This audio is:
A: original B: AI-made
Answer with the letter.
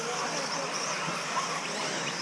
A